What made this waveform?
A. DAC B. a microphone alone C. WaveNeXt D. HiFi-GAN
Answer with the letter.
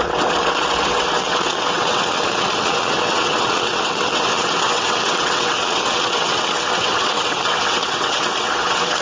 C